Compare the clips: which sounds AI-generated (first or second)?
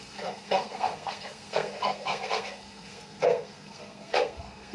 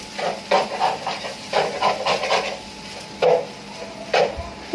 first